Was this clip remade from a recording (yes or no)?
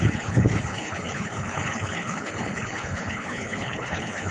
yes